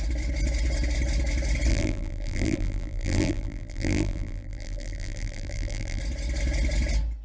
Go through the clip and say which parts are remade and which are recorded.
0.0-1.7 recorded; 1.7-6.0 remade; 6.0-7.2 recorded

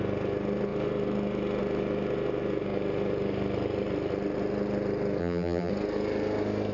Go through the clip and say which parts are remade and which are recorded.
0.0-5.2 recorded; 5.2-5.7 remade; 5.7-6.7 recorded